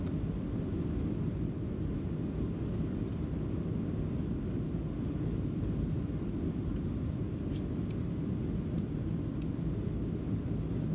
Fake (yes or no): no